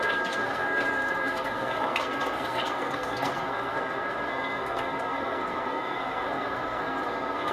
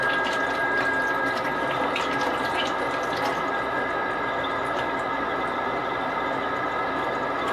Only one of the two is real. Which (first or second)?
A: second